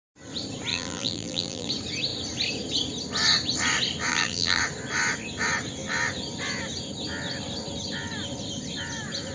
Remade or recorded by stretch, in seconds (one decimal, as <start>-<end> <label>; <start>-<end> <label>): 0.0-0.7 recorded; 0.7-1.7 remade; 1.7-4.1 recorded; 4.1-4.6 remade; 4.6-9.3 recorded